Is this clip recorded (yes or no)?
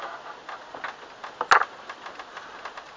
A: yes